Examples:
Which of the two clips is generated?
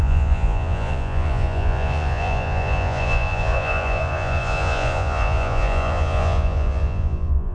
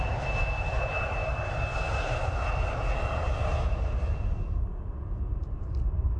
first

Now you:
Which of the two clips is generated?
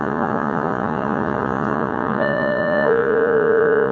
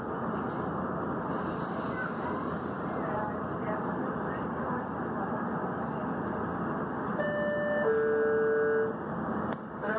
first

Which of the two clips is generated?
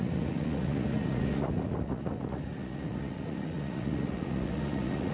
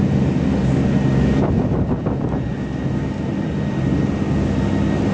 first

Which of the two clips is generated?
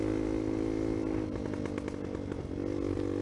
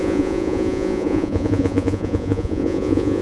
second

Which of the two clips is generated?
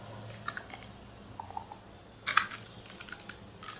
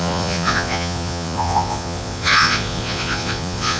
second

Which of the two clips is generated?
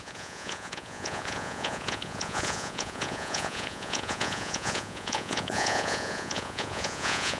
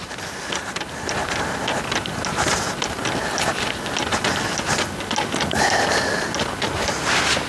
first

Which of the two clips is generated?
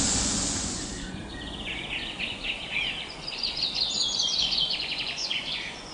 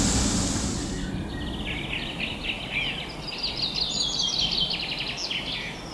first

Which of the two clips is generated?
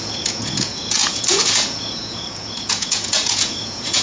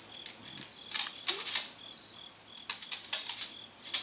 first